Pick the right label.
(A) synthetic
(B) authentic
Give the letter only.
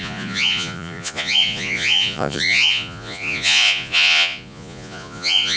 A